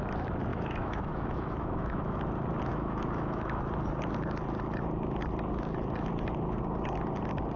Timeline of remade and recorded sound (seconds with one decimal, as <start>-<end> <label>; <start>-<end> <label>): 0.0-0.5 recorded; 0.5-2.2 remade; 2.2-2.7 recorded; 2.7-3.6 remade; 3.6-7.6 recorded